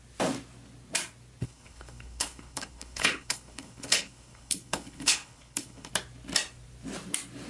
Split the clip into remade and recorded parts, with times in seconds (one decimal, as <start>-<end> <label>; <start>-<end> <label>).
0.0-1.4 recorded; 1.4-5.9 remade; 5.9-7.5 recorded

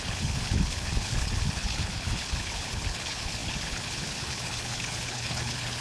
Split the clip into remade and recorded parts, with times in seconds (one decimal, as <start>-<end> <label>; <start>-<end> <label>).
0.0-5.8 remade